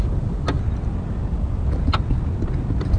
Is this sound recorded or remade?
recorded